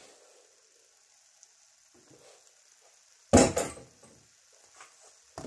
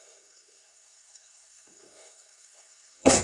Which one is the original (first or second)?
first